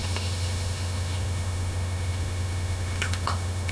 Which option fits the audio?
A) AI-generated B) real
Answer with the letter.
A